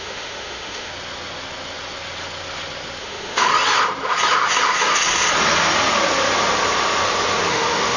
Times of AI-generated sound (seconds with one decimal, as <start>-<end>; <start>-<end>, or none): 0.0-0.9; 3.0-3.5; 7.5-8.0